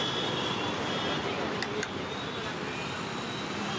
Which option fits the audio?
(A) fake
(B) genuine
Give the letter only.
B